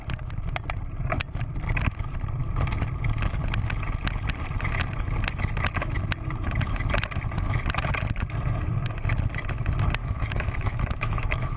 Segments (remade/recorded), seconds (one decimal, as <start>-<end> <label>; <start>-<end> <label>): 0.0-10.0 recorded; 10.0-11.6 remade